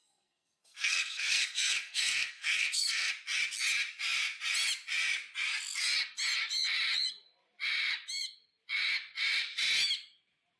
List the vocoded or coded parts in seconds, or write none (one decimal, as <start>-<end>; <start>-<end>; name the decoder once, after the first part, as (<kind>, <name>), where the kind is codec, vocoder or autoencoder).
0.0-3.1 (codec, SNAC)